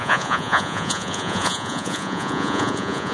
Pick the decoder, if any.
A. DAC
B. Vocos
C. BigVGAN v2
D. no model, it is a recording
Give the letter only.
B